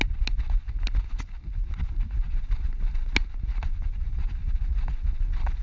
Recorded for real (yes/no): yes